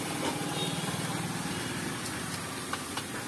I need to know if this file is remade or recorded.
recorded